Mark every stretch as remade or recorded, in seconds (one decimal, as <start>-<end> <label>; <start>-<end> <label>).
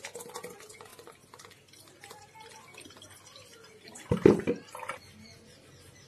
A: 0.0-6.1 recorded